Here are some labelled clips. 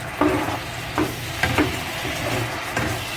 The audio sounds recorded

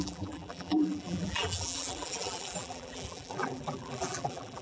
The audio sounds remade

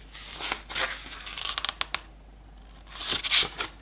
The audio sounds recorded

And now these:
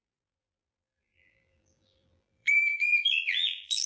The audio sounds remade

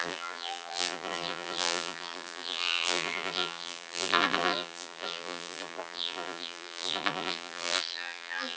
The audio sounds remade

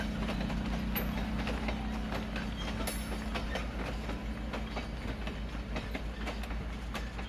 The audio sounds recorded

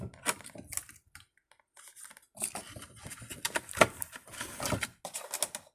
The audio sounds recorded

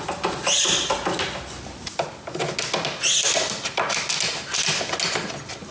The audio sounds recorded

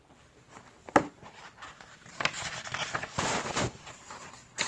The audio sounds remade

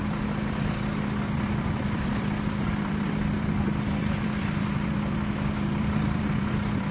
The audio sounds remade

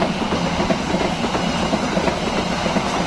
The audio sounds recorded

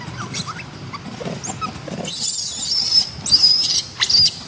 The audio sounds recorded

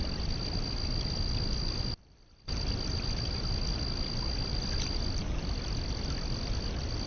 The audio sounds recorded